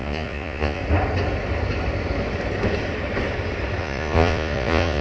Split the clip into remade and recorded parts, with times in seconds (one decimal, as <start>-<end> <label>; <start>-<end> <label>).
0.0-0.8 remade; 0.8-3.8 recorded; 3.8-5.0 remade